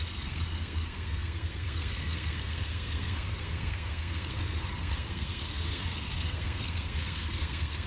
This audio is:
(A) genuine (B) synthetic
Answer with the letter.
B